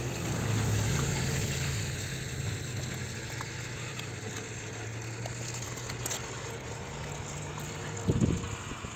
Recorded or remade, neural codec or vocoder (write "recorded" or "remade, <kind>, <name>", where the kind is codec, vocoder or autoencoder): recorded